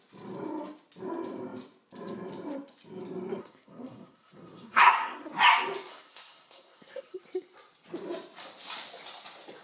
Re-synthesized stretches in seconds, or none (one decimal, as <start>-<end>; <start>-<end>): 3.4-5.3; 5.9-7.2